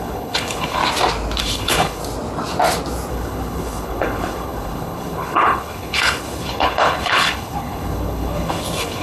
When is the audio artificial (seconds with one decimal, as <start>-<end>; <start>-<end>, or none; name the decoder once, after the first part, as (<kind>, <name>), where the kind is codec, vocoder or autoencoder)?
0.0-0.8 (codec, HILCodec); 1.4-2.0; 3.1-9.0